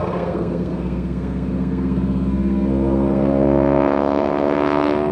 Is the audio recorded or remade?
remade